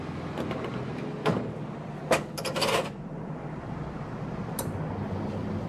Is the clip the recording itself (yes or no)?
yes